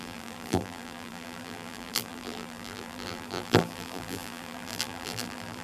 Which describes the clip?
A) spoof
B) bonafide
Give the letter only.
A